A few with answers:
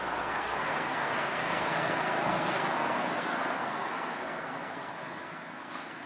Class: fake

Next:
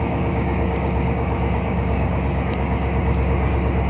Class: fake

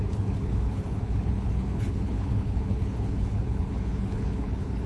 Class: fake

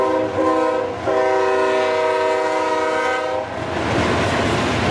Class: real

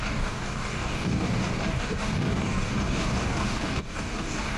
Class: fake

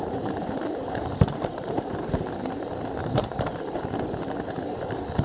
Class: fake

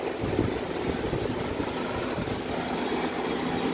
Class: real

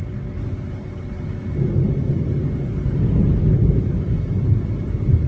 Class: real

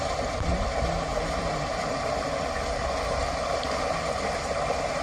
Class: real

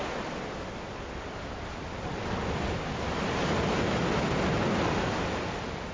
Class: real